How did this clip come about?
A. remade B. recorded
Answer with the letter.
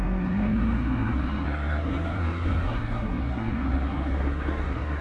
A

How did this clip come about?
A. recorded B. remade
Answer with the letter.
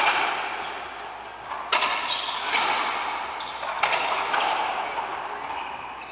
A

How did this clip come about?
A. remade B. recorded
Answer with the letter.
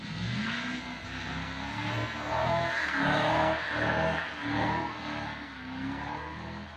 A